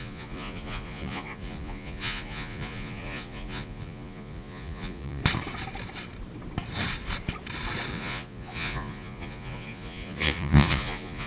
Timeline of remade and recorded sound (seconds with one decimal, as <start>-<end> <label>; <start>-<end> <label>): 0.0-5.2 remade; 5.2-7.9 recorded; 7.9-11.3 remade